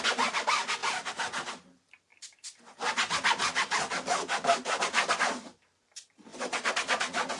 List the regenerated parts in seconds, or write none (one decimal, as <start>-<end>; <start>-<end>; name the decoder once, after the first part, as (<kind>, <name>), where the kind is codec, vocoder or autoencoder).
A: none

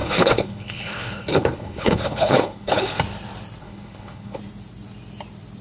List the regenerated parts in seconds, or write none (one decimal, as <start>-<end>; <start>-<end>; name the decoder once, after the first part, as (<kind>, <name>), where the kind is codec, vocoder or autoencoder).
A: 0.0-3.0 (codec, HILCodec); 3.6-4.4

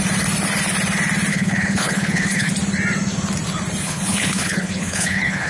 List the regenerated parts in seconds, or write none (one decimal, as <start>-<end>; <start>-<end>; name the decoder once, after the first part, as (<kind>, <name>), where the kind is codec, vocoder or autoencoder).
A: 1.3-2.5 (codec, HILCodec); 3.8-5.5

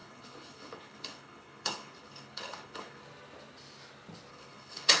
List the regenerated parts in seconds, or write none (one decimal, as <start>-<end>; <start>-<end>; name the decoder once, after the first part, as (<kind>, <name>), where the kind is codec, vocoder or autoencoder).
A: 0.0-3.0 (codec, HILCodec); 4.3-5.0

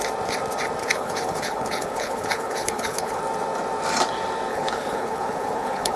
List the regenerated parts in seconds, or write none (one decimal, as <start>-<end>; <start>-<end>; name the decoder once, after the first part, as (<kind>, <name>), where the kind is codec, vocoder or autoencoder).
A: 0.8-3.2 (codec, HILCodec); 4.5-6.0

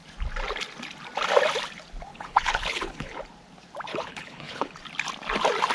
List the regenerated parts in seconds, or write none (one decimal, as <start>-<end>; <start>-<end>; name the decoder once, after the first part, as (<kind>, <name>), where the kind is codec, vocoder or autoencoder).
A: 2.1-3.2 (codec, HILCodec); 3.9-4.8

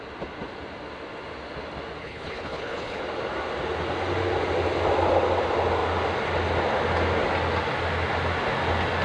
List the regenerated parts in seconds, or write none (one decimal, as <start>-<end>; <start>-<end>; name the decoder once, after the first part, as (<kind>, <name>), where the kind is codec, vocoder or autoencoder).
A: 2.0-3.0 (codec, HILCodec)